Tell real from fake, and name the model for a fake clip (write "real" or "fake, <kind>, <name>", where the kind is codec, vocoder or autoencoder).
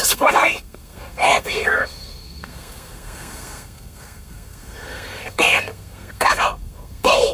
fake, codec, SNAC